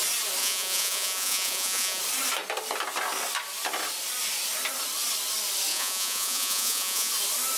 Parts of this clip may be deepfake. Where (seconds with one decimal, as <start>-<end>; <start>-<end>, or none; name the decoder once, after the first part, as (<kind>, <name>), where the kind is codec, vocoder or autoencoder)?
0.4-2.0 (vocoder, Vocos); 5.7-7.1